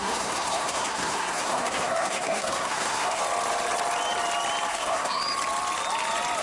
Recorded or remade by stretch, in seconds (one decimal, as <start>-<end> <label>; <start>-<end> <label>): 0.0-3.2 remade; 3.2-4.7 recorded; 4.7-5.2 remade; 5.2-6.4 recorded